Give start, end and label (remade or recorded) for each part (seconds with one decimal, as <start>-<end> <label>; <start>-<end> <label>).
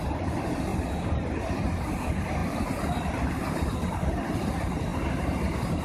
0.0-2.4 remade; 2.4-3.1 recorded; 3.1-4.9 remade; 4.9-5.8 recorded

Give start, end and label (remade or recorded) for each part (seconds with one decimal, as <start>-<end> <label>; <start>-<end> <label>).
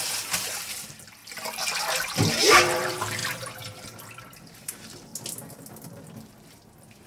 0.0-1.2 remade; 1.2-2.3 recorded; 2.3-3.2 remade; 3.2-4.6 recorded; 4.6-5.1 remade; 5.1-7.1 recorded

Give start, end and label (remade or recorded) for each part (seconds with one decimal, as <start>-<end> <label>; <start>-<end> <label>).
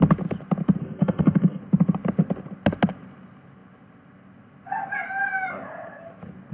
0.0-0.8 recorded; 0.8-1.6 remade; 1.6-6.5 recorded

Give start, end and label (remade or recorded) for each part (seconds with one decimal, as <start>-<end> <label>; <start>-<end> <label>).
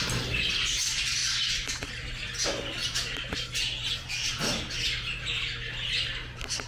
0.0-6.7 recorded